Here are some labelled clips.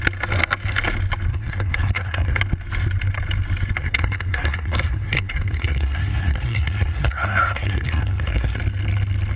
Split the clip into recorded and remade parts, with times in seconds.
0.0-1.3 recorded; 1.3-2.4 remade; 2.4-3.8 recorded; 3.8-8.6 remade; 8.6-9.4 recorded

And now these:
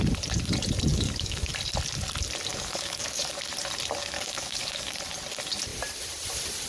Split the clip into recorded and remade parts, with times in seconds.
0.0-0.9 recorded; 0.9-1.5 remade; 1.5-2.5 recorded; 2.5-3.4 remade; 3.4-4.0 recorded; 4.0-5.0 remade; 5.0-6.7 recorded